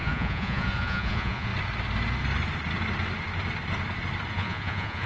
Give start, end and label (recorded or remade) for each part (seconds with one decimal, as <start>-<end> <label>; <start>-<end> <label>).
0.0-1.5 remade; 1.5-4.3 recorded; 4.3-5.1 remade